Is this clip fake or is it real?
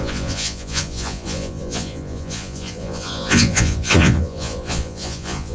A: fake